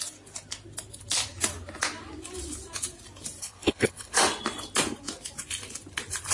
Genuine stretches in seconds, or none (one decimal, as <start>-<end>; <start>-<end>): 0.0-3.4; 4.2-6.3